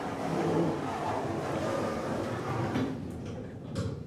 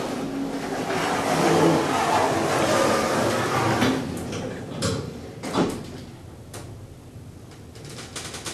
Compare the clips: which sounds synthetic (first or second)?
first